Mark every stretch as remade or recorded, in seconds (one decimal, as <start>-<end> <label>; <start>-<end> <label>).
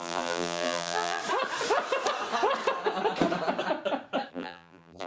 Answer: 0.0-1.2 remade; 1.2-4.3 recorded; 4.3-5.1 remade